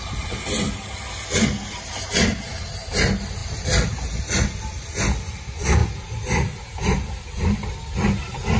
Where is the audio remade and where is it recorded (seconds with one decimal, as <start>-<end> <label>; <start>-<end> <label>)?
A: 0.0-8.6 recorded